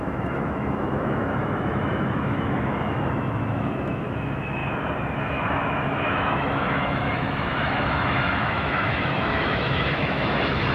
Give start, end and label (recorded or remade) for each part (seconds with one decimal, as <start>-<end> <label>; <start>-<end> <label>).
0.0-4.6 remade; 4.6-5.2 recorded; 5.2-10.7 remade